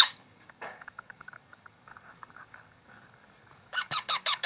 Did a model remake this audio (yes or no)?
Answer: yes